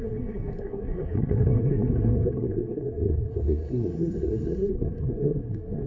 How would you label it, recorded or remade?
remade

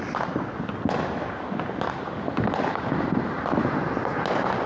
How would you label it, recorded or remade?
recorded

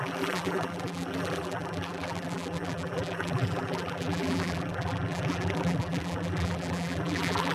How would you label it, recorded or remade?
remade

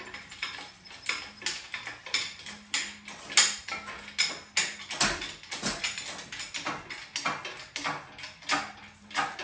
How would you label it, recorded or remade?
recorded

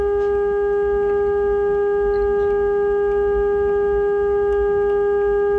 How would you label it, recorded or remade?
recorded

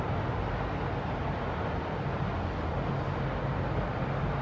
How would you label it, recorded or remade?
recorded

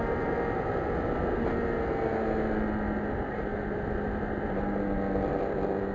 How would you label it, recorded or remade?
recorded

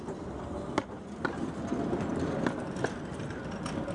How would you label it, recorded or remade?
recorded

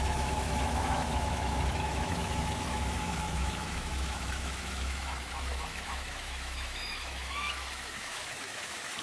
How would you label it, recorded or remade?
remade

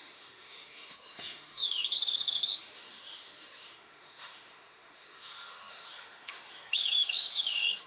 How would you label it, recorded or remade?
remade